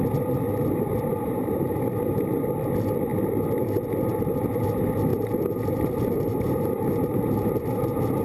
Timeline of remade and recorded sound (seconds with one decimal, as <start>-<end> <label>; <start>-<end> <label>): 0.0-1.1 recorded; 1.1-1.8 remade; 1.8-5.1 recorded; 5.1-7.7 remade; 7.7-8.2 recorded